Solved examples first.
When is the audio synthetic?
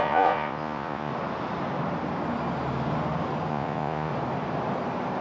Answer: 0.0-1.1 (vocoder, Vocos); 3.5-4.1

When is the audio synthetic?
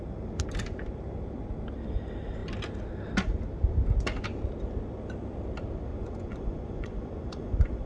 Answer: 5.9-7.9 (vocoder, Vocos)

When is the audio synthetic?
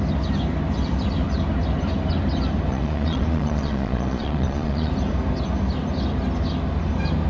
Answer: 2.7-4.9 (vocoder, Vocos)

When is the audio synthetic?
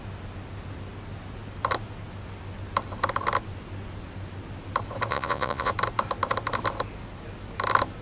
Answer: 5.1-5.7 (vocoder, Vocos)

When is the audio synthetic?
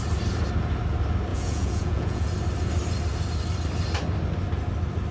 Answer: 1.3-2.3 (vocoder, Vocos)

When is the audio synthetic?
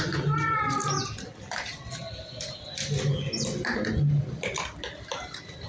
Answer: none